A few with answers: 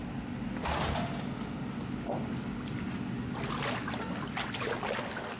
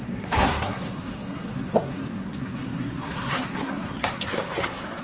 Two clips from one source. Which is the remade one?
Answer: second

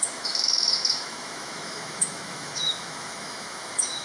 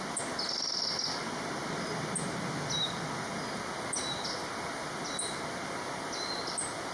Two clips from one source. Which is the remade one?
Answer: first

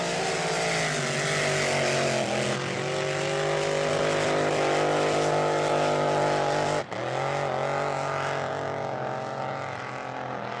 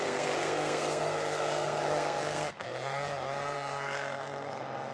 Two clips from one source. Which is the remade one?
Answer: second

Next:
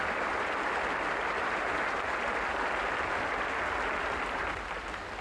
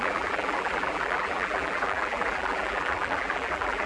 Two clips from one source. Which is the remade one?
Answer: second